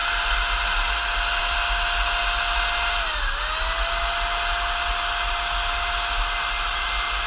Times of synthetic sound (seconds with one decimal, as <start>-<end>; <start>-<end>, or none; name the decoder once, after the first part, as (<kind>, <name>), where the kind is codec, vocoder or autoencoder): none